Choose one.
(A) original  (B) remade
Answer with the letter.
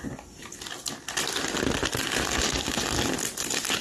A